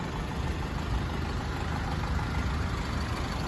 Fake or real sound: real